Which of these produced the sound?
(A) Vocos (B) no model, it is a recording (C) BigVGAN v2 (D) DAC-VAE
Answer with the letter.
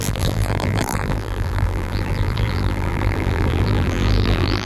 C